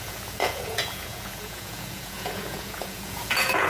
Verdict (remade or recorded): remade